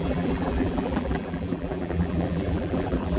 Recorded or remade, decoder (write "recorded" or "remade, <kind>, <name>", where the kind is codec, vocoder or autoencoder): remade, vocoder, BigVGAN v2